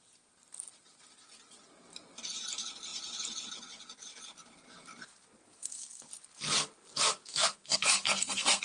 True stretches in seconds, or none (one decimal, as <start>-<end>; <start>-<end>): 0.0-5.4; 6.1-7.1